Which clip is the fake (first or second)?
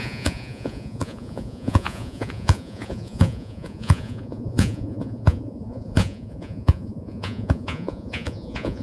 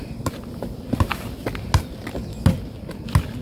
first